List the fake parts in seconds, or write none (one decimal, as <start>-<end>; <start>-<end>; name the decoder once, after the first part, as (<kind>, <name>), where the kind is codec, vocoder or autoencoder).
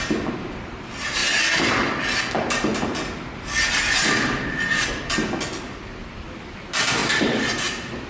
1.2-2.0 (vocoder, BigVGAN v2); 7.0-8.1